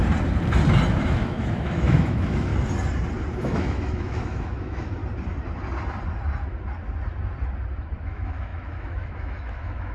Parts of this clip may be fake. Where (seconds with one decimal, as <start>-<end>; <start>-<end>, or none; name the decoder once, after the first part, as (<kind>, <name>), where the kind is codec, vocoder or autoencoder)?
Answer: 1.0-2.5 (autoencoder, DAC-VAE); 3.4-5.0; 8.0-9.9